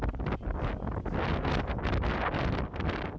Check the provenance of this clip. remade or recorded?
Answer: recorded